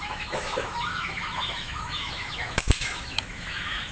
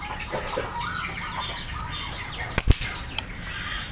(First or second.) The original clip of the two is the second